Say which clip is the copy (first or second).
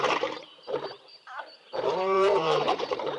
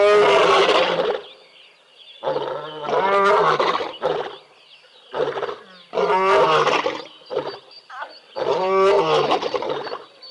first